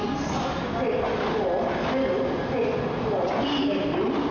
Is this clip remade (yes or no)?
no